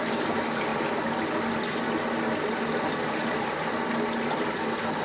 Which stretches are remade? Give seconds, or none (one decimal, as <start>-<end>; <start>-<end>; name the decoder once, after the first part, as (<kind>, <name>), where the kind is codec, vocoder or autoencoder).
none